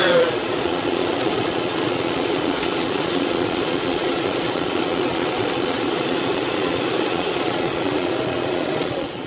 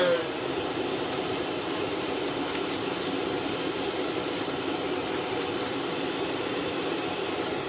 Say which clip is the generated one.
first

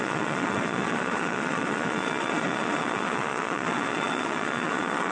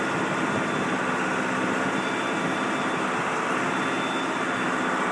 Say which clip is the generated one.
first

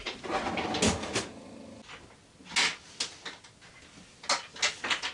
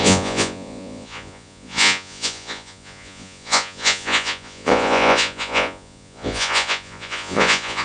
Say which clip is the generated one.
second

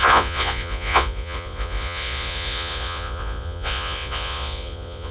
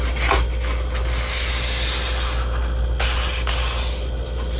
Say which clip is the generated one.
first